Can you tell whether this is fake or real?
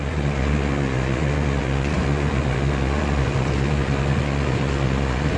fake